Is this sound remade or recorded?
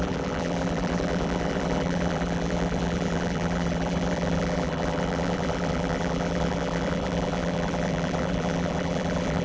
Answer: remade